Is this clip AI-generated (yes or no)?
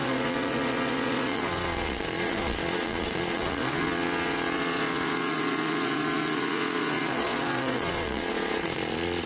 yes